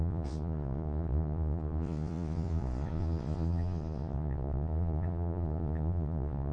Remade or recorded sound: remade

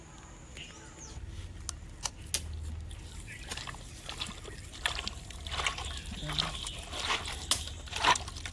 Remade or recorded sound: recorded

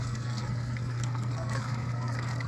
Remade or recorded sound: remade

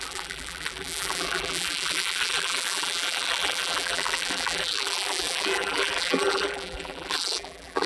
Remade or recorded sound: remade